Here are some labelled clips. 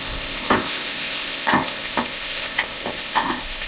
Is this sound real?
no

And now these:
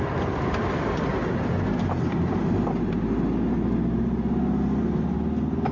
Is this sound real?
yes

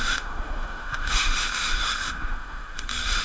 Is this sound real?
no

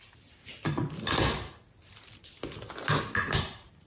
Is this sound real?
yes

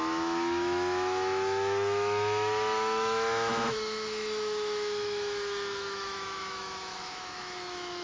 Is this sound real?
no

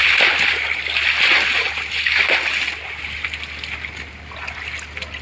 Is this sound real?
yes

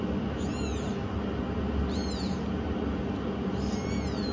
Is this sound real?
yes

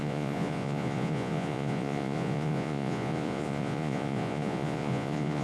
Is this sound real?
no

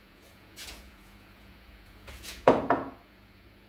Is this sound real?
no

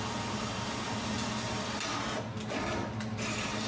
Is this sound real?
yes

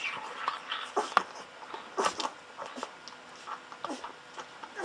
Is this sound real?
yes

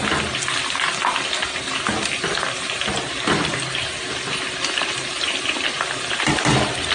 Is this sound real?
yes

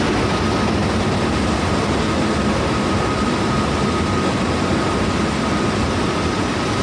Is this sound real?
yes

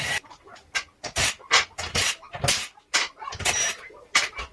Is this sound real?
yes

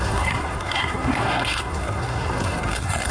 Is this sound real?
no